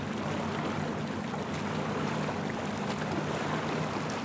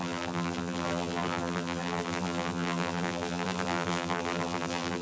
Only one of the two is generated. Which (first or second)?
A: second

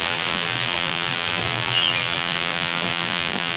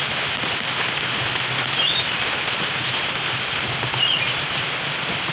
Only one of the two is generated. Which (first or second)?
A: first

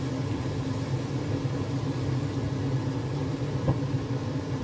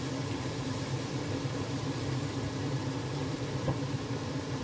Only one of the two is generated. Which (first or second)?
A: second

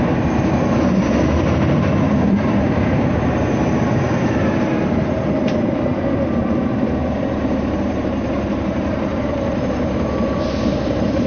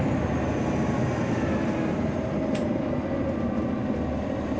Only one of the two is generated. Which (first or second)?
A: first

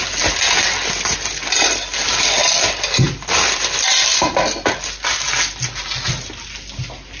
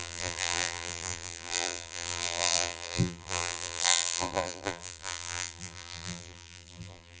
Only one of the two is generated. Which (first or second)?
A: second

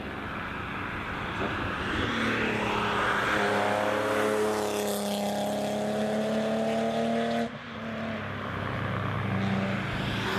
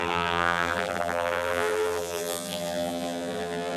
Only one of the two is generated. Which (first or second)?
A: second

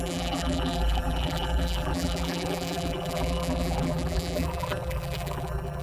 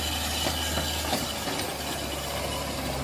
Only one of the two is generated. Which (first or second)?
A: first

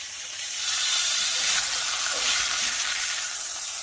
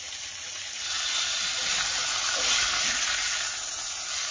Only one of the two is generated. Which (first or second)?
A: first